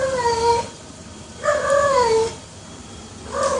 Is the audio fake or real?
fake